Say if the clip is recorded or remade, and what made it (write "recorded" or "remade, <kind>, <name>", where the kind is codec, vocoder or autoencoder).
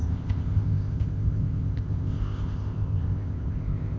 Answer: remade, codec, ZipCodec